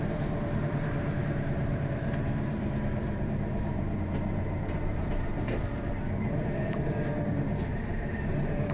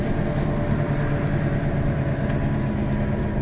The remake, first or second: first